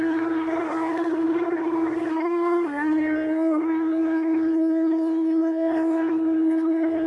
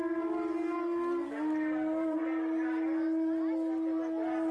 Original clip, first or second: second